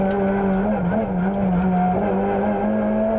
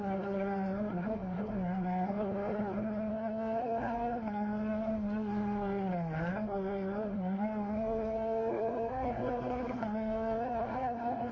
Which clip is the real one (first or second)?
first